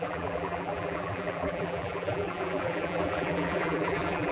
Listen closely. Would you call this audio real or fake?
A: fake